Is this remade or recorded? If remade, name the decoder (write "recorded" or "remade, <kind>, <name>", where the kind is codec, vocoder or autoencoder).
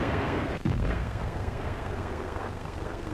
remade, codec, SNAC